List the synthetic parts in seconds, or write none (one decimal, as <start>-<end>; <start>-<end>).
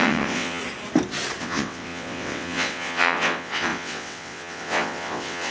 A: 0.0-0.6; 1.4-5.5